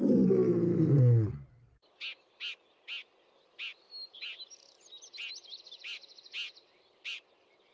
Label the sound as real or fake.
real